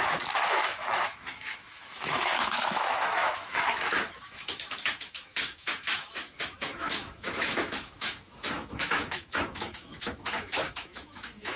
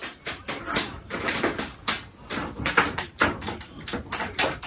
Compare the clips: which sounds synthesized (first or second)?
first